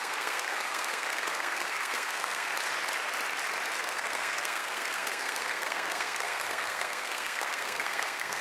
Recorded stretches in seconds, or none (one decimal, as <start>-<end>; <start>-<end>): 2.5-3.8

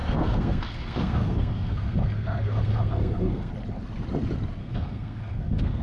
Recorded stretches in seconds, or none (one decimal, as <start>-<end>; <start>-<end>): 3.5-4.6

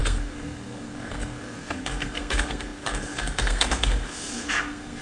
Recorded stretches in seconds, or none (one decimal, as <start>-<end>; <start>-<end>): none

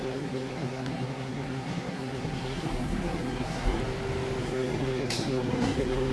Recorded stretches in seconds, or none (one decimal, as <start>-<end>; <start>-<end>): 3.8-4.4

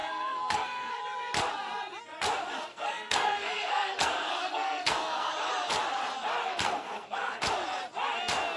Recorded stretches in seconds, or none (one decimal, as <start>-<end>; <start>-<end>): 1.0-2.7; 5.3-6.4; 7.4-8.6

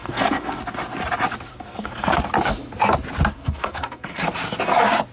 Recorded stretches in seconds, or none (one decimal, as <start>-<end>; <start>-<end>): 0.6-1.5; 2.2-3.3; 4.2-5.1

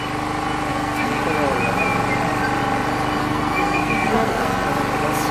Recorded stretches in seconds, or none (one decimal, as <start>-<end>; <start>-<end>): 0.0-0.7; 1.2-3.2; 4.7-5.3